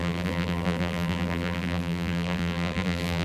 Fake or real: fake